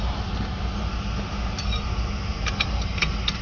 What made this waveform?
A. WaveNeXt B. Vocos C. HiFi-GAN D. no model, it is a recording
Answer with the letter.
D